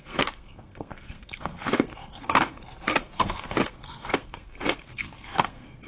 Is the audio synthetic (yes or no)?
yes